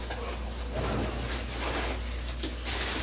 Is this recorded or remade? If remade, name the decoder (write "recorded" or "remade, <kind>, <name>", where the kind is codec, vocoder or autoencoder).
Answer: recorded